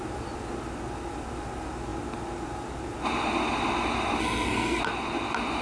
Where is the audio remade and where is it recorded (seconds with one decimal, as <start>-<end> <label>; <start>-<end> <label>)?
0.0-4.2 recorded; 4.2-4.8 remade; 4.8-5.6 recorded